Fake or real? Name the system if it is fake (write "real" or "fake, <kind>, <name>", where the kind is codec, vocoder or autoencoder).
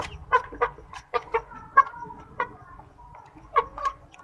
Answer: fake, vocoder, Vocos